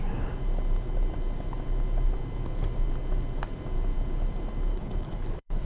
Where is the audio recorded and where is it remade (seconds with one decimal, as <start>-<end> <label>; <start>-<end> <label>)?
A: 0.0-4.7 recorded; 4.7-5.7 remade

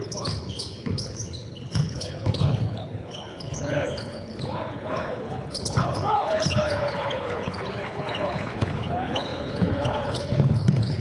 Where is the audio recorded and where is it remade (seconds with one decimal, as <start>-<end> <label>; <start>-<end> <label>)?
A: 0.0-11.0 remade